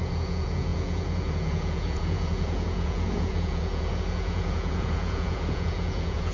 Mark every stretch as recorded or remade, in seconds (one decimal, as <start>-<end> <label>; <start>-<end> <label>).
0.0-6.3 remade